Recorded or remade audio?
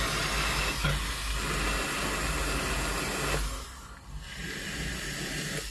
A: recorded